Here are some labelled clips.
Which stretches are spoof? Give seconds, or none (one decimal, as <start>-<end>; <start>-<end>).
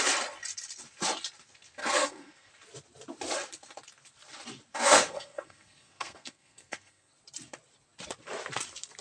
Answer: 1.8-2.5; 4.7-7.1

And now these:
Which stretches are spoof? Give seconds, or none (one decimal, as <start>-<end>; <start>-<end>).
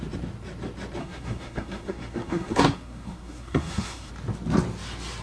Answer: 1.0-4.1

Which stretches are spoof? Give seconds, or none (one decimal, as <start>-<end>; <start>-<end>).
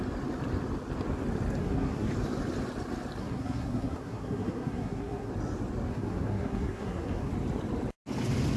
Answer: 1.6-2.1; 3.2-5.3; 5.9-7.3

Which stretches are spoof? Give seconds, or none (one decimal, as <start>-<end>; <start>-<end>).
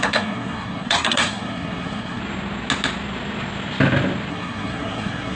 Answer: 0.0-2.2; 4.3-5.4